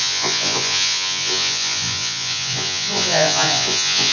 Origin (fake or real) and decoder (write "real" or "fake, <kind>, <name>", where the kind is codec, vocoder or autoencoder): fake, vocoder, Vocos